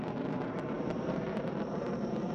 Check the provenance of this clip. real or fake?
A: fake